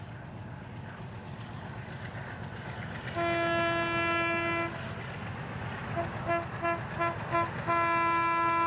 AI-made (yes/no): no